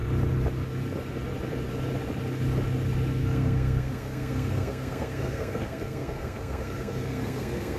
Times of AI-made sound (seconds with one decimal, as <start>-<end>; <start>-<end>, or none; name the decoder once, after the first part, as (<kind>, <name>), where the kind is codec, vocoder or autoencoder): 3.2-7.8 (codec, SNAC)